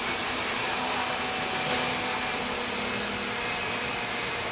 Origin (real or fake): fake